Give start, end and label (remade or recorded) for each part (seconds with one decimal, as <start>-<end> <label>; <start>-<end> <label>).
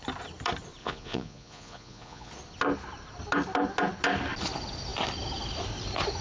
0.0-0.8 recorded; 0.8-2.3 remade; 2.3-6.2 recorded